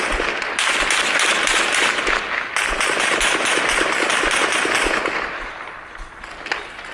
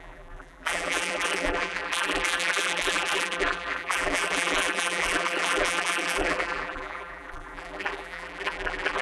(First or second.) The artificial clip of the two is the second